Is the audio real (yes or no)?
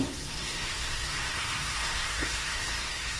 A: no